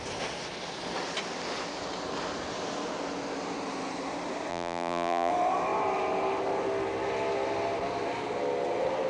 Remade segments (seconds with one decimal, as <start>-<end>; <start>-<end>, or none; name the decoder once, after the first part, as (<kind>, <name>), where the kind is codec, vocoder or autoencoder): 4.5-5.3 (vocoder, BigVGAN v2)